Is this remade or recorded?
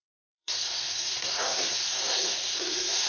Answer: remade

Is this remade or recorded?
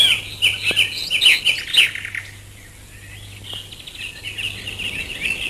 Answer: recorded